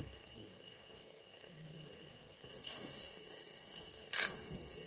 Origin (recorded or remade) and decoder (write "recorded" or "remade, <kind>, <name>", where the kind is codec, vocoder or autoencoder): remade, codec, SNAC